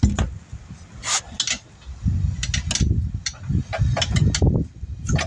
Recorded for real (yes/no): yes